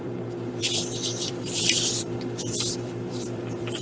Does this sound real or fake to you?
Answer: fake